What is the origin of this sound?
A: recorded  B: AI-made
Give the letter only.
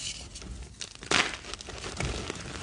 A